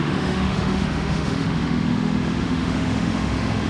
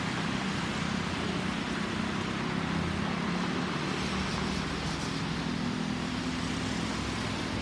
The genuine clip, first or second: second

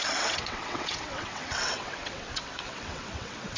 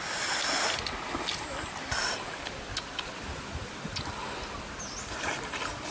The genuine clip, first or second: second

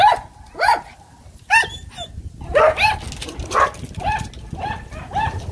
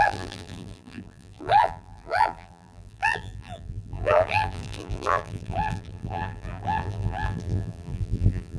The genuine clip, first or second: first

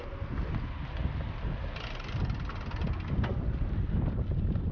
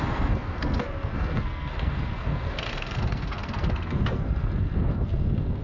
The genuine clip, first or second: first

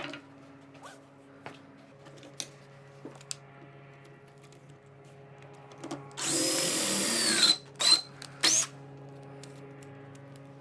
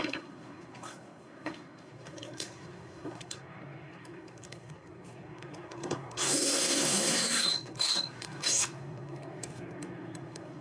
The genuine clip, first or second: first